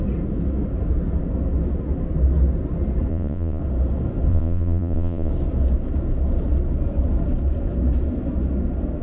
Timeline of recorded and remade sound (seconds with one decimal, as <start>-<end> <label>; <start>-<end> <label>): 0.0-3.1 recorded; 3.1-3.6 remade; 3.6-4.3 recorded; 4.3-5.3 remade; 5.3-9.0 recorded

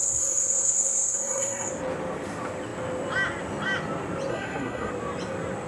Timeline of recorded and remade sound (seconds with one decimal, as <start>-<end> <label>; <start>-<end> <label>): 0.0-1.7 remade; 1.7-4.3 recorded; 4.3-4.9 remade; 4.9-5.7 recorded

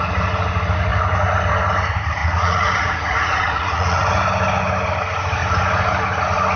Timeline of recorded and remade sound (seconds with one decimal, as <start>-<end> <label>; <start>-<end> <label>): 0.0-2.2 recorded; 2.2-4.0 remade; 4.0-6.6 recorded

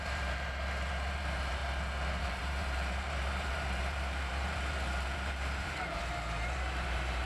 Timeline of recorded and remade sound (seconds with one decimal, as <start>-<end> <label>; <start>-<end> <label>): 0.0-1.6 remade; 1.6-2.2 recorded; 2.2-7.3 remade

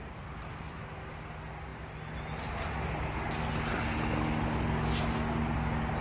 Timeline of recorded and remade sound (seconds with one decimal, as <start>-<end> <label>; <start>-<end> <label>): 0.0-0.8 remade; 0.8-6.0 recorded

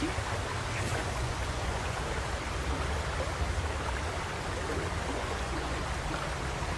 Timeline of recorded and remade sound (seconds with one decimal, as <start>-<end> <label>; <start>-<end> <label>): 0.0-0.9 recorded; 0.9-2.0 remade; 2.0-5.1 recorded; 5.1-5.8 remade; 5.8-6.8 recorded

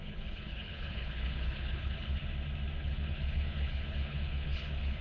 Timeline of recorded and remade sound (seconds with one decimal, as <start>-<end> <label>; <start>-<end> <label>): 0.0-2.2 remade; 2.2-2.8 recorded; 2.8-5.0 remade

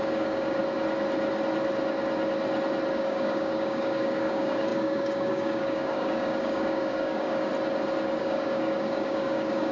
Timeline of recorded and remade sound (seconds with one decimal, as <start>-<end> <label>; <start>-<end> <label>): 0.0-0.6 remade; 0.6-2.9 recorded; 2.9-7.5 remade; 7.5-8.2 recorded; 8.2-9.7 remade